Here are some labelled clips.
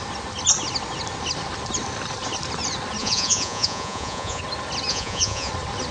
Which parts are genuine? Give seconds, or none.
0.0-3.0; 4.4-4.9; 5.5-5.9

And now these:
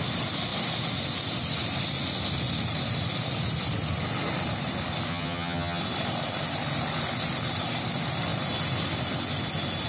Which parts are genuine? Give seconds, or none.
0.0-5.1; 5.8-9.9

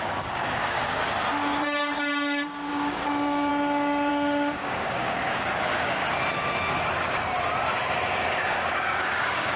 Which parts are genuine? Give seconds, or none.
1.0-2.7; 3.5-4.1; 6.0-8.3

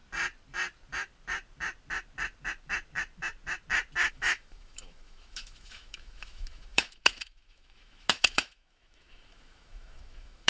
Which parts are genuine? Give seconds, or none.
0.0-4.1

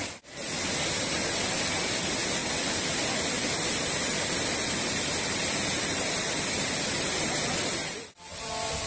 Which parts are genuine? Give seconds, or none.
0.0-8.9